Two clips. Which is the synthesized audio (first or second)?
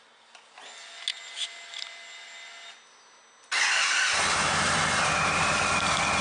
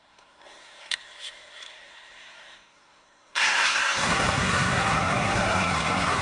second